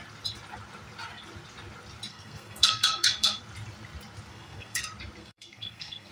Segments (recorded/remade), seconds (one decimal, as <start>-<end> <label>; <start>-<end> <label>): 0.0-2.1 recorded; 2.1-3.4 remade; 3.4-4.3 recorded; 4.3-4.8 remade; 4.8-5.2 recorded; 5.2-6.1 remade